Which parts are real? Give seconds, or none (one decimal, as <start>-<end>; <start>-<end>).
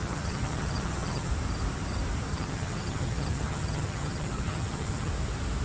1.3-2.3; 5.1-5.6